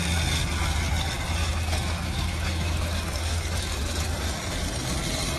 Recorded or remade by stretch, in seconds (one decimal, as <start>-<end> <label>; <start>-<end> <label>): 0.0-1.4 recorded; 1.4-4.1 remade; 4.1-5.4 recorded

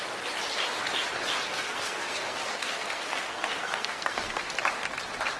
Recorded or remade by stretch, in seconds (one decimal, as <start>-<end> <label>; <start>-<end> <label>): 0.0-1.5 recorded; 1.5-4.4 remade; 4.4-5.4 recorded

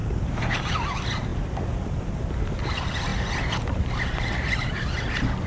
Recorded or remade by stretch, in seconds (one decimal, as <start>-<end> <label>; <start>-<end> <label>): 0.0-0.7 remade; 0.7-1.3 recorded; 1.3-2.3 remade; 2.3-5.5 recorded

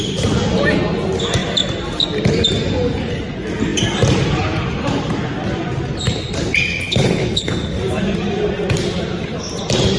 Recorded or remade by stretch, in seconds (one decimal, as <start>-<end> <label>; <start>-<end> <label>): 0.0-6.7 recorded; 6.7-7.8 remade; 7.8-10.0 recorded

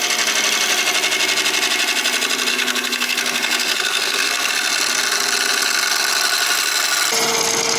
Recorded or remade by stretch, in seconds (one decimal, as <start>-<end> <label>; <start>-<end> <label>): 0.0-2.5 recorded; 2.5-4.5 remade; 4.5-7.8 recorded

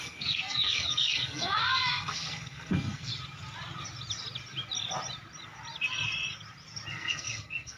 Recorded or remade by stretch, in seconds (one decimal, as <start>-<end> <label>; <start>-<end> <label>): 0.0-3.1 remade; 3.1-6.9 recorded; 6.9-7.8 remade